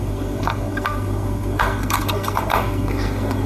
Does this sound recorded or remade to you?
remade